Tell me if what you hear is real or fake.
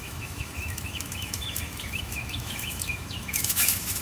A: fake